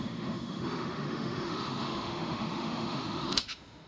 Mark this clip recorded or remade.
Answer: remade